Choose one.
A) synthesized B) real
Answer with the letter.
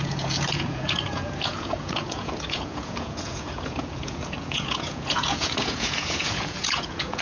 A